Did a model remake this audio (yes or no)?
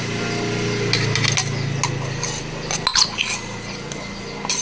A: no